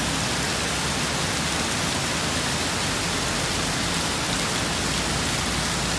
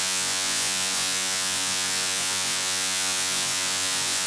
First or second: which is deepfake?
second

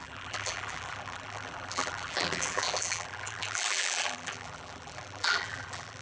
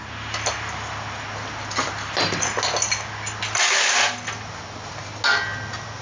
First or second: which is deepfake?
first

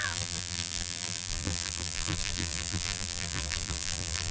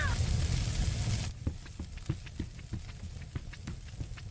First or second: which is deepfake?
first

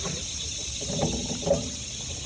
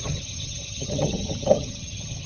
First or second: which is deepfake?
second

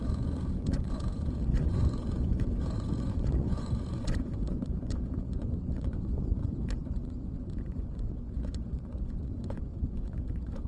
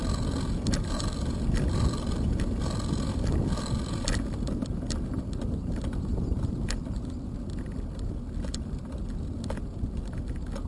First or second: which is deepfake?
first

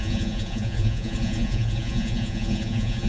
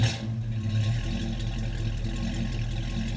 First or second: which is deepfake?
first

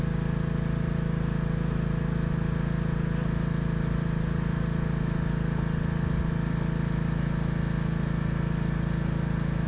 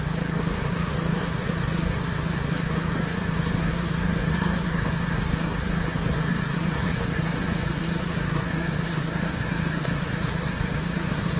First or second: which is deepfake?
second